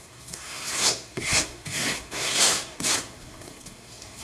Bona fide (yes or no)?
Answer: no